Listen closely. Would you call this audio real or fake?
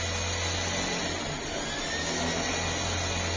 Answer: real